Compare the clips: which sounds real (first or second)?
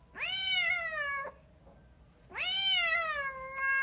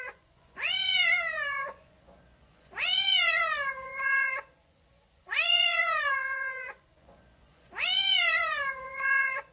first